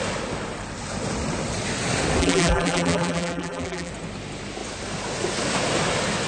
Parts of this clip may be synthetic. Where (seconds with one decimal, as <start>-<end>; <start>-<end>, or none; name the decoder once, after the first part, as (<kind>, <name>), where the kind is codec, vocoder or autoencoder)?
2.2-3.9 (vocoder, BigVGAN v2)